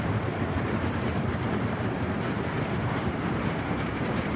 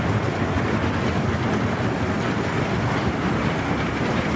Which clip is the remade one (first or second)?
first